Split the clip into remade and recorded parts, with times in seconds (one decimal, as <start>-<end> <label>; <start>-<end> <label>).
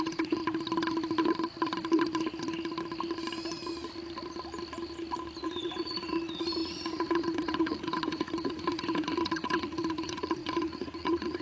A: 0.0-0.4 remade; 0.4-5.4 recorded; 5.4-11.4 remade